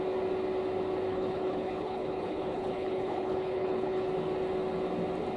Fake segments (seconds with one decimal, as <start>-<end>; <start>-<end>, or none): 1.1-4.1